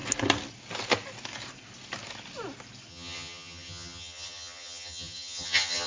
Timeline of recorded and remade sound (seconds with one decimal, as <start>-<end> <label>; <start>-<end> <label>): 0.0-2.9 recorded; 2.9-5.9 remade